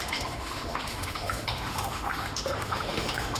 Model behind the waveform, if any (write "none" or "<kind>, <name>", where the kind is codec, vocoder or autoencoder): autoencoder, DAC-VAE